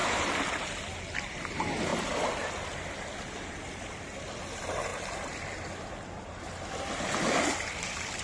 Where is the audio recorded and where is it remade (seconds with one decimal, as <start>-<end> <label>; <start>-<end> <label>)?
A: 0.0-0.8 remade; 0.8-8.2 recorded